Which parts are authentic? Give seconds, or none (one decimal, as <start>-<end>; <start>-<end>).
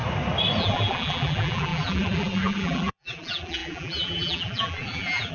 0.0-0.6